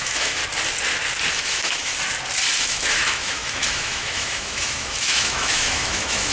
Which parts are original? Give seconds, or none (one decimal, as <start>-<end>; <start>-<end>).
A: 0.4-1.3; 1.9-2.6